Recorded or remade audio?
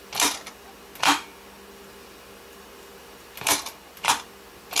recorded